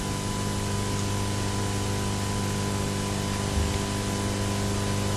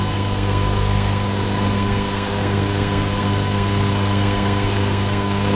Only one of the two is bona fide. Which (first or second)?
first